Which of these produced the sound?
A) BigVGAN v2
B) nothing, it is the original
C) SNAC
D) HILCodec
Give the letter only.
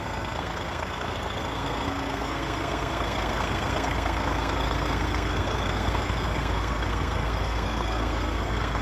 C